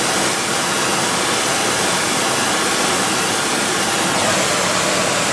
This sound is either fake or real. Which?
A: real